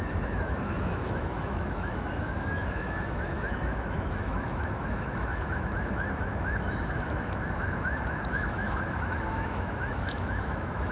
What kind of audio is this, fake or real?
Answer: fake